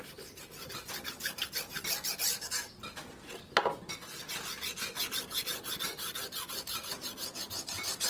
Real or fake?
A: real